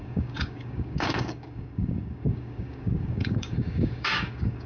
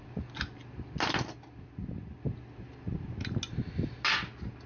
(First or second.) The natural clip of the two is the second